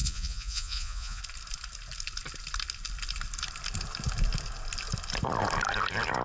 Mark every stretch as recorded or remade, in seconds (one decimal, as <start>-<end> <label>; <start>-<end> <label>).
0.0-1.2 remade; 1.2-6.2 recorded